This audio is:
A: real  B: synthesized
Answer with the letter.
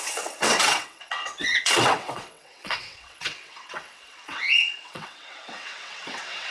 B